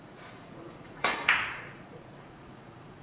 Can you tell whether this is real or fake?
fake